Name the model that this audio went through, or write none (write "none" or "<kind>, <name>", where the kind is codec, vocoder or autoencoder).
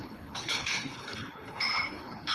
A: codec, HILCodec